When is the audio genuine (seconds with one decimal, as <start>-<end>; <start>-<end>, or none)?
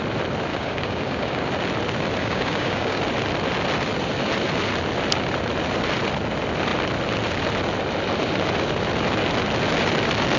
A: 0.0-0.5; 1.4-2.2; 3.0-10.4